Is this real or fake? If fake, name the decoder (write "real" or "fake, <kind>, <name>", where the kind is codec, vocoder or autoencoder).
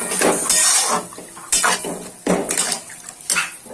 real